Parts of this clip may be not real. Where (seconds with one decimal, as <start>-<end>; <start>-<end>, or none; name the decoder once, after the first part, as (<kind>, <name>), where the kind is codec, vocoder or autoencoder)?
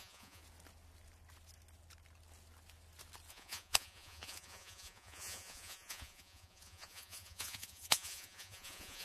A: 0.0-0.4 (vocoder, Vocos); 3.3-9.0